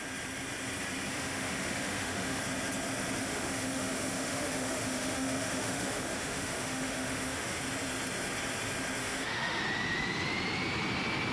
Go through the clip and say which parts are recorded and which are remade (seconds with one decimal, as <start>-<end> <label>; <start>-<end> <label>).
0.0-1.1 recorded; 1.1-2.4 remade; 2.4-3.2 recorded; 3.2-7.6 remade; 7.6-9.0 recorded; 9.0-9.6 remade; 9.6-11.3 recorded